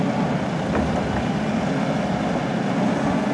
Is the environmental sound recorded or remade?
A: recorded